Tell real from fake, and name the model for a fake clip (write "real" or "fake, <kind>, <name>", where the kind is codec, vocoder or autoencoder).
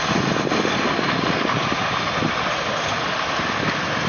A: real